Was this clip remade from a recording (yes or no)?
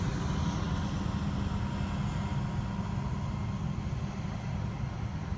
no